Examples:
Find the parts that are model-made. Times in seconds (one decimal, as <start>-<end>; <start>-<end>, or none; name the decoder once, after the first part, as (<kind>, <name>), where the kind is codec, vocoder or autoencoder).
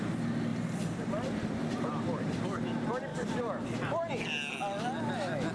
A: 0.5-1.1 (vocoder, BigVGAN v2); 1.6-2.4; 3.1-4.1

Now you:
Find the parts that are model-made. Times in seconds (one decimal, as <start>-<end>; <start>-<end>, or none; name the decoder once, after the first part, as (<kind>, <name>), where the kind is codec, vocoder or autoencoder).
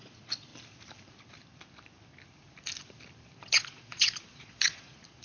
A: 0.0-0.5 (vocoder, Vocos); 3.4-5.2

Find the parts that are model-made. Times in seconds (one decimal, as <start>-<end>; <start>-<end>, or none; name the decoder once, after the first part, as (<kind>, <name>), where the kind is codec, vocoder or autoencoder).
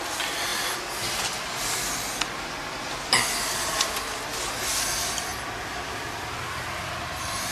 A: none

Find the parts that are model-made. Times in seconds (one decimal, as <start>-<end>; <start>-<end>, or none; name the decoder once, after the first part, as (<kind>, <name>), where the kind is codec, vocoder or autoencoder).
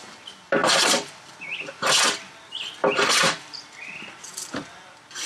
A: 0.6-1.2 (vocoder, BigVGAN v2); 2.8-5.3